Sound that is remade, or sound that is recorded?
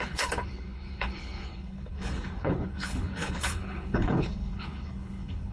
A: remade